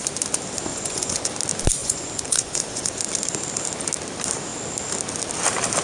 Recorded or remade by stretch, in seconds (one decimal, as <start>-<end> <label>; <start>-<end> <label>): 0.0-0.7 recorded; 0.7-1.3 remade; 1.3-1.8 recorded; 1.8-3.0 remade; 3.0-5.8 recorded